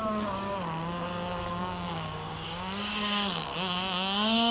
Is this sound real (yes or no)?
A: no